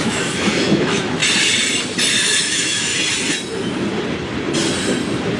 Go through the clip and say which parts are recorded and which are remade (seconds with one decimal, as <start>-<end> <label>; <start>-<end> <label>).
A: 0.0-1.2 remade; 1.2-2.1 recorded; 2.1-2.9 remade; 2.9-5.4 recorded